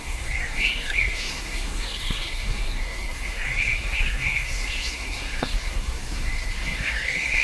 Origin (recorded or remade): remade